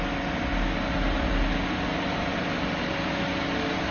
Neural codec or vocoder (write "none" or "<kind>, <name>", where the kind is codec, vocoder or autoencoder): none